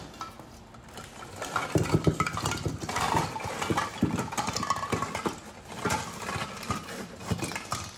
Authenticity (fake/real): real